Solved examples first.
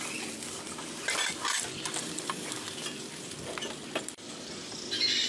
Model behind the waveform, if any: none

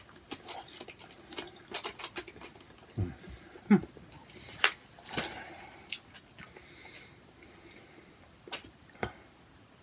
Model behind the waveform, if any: none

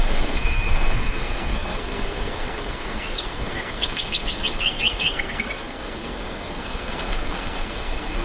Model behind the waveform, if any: codec, SNAC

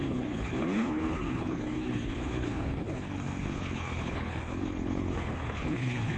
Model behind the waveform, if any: codec, HILCodec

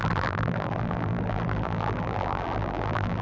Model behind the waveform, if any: vocoder, BigVGAN v2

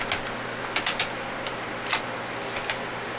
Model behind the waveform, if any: none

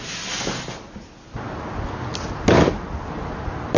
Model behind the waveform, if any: none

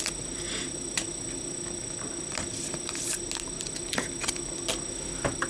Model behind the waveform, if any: none